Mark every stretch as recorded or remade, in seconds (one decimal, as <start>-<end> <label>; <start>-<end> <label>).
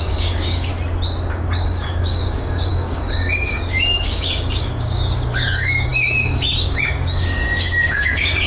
0.0-0.7 remade; 0.7-1.3 recorded; 1.3-8.5 remade